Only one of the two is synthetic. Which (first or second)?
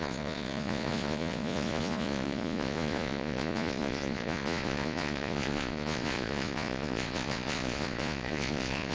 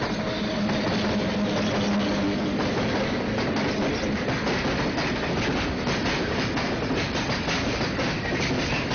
first